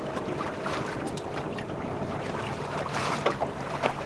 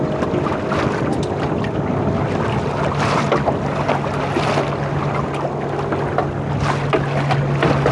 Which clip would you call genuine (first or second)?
second